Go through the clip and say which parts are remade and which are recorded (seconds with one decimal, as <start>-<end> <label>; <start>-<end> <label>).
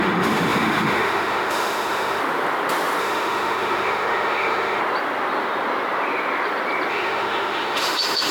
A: 0.0-2.2 remade; 2.2-3.0 recorded; 3.0-4.8 remade; 4.8-6.9 recorded; 6.9-8.3 remade